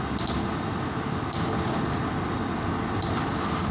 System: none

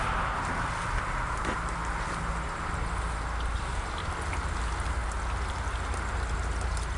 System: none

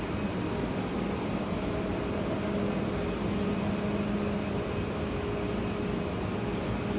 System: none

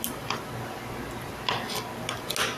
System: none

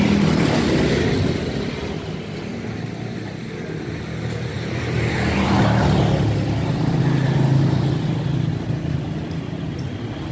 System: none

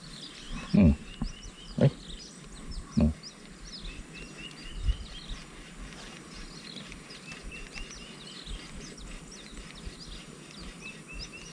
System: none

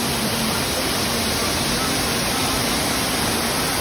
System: none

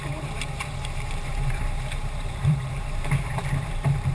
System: vocoder, BigVGAN v2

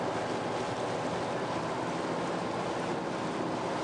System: none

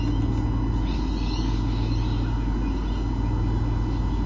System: none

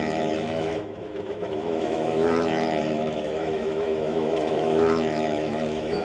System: autoencoder, DAC-VAE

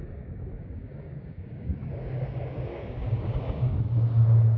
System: codec, DAC